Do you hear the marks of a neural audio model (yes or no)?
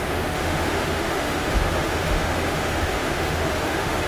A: yes